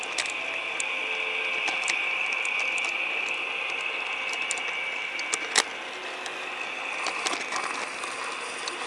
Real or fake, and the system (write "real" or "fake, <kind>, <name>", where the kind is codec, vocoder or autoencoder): real